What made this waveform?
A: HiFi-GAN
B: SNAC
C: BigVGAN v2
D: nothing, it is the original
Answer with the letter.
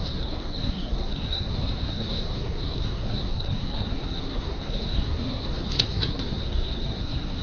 B